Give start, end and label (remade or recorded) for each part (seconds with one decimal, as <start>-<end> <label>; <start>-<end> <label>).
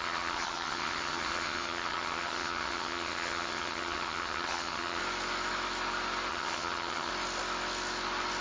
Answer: 0.0-5.0 remade; 5.0-6.3 recorded; 6.3-7.1 remade; 7.1-8.4 recorded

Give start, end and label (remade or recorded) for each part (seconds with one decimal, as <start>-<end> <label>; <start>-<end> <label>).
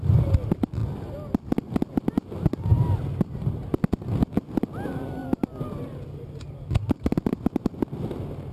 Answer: 0.0-2.7 recorded; 2.7-3.6 remade; 3.6-5.2 recorded; 5.2-6.4 remade; 6.4-8.5 recorded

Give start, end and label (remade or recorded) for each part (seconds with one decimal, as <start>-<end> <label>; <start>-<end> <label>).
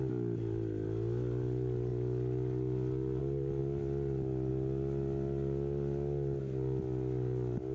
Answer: 0.0-7.7 recorded